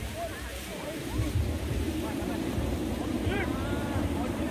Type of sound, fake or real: fake